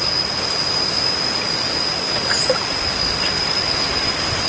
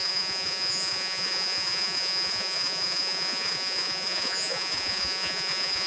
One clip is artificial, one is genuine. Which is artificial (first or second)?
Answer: second